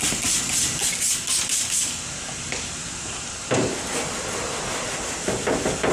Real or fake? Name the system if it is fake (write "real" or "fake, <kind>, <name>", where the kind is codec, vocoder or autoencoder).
real